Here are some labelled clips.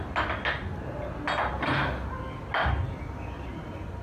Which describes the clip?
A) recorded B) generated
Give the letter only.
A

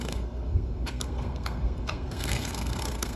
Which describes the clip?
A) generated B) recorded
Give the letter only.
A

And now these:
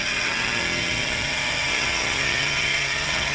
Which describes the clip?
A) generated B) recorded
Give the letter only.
A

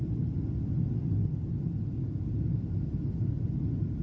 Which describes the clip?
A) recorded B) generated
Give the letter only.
A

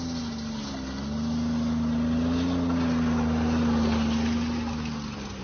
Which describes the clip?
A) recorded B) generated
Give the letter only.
A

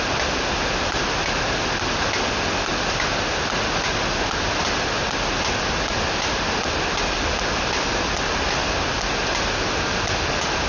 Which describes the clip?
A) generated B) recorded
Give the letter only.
B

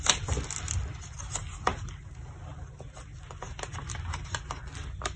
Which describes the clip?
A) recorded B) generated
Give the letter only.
A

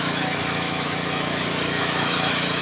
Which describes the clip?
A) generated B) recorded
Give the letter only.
A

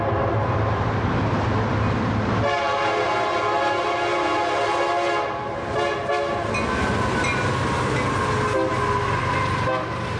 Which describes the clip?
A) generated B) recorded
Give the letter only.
B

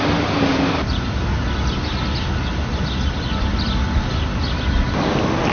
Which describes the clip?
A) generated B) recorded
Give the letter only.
B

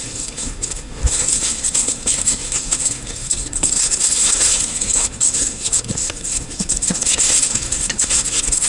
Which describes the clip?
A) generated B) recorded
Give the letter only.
A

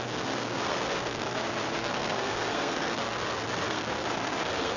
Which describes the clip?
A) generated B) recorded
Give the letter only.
A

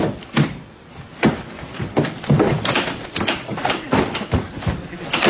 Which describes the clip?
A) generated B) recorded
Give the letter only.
B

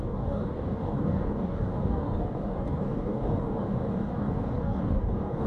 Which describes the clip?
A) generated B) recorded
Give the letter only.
A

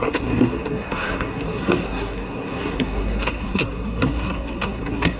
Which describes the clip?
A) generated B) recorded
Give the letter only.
A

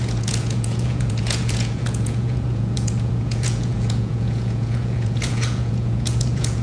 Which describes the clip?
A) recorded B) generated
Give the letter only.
B